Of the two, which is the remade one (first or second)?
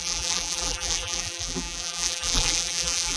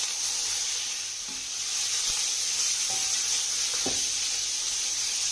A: first